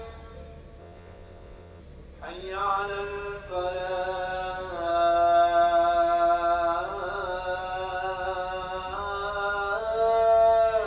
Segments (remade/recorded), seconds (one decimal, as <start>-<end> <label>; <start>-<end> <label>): 0.0-0.8 recorded; 0.8-1.8 remade; 1.8-10.9 recorded